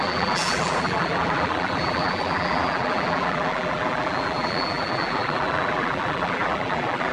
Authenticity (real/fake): fake